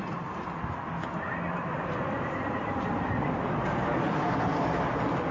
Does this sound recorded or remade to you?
recorded